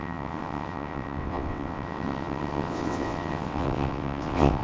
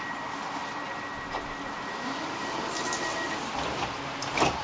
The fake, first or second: first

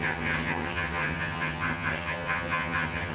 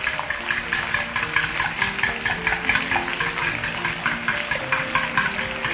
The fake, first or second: first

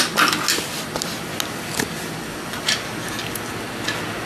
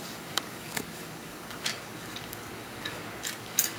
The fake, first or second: second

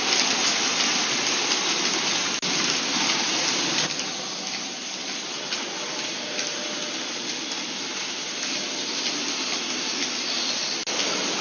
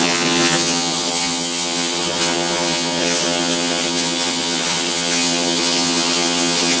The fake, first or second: second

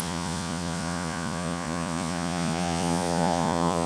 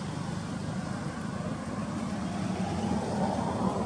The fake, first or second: first